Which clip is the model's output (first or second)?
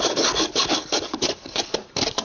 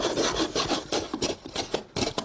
first